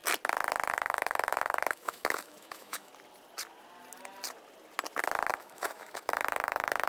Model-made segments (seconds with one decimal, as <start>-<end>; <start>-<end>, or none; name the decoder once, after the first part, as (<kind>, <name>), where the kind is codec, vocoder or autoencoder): 0.7-2.9 (autoencoder, DAC-VAE); 5.3-6.9